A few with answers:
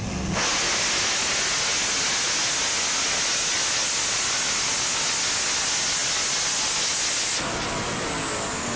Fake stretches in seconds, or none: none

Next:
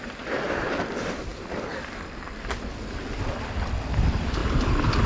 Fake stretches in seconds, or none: 0.0-4.4 (vocoder, BigVGAN v2)

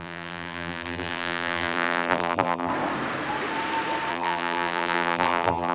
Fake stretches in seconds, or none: 0.0-2.7 (vocoder, BigVGAN v2); 4.1-5.7

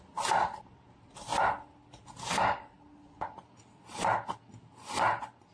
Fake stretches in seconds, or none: none

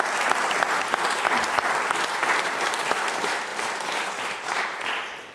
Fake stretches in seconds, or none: 3.5-4.1 (vocoder, BigVGAN v2)

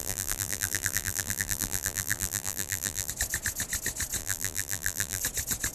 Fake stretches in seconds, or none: 0.0-3.1 (vocoder, BigVGAN v2); 4.2-5.2

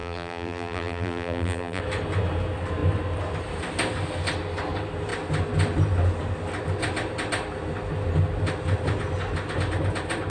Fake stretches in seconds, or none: 0.0-1.8 (vocoder, BigVGAN v2)

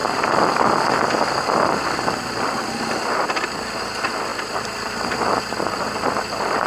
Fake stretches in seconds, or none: none